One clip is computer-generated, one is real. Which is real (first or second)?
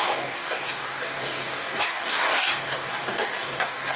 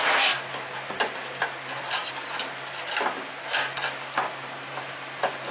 second